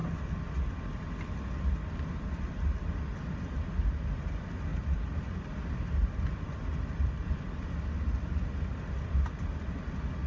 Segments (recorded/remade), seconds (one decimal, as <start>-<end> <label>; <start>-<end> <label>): 0.0-4.7 recorded; 4.7-5.6 remade; 5.6-6.0 recorded; 6.0-7.7 remade; 7.7-10.3 recorded